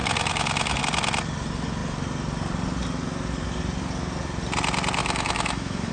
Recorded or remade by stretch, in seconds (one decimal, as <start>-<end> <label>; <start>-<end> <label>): 0.0-0.8 remade; 0.8-5.0 recorded; 5.0-5.9 remade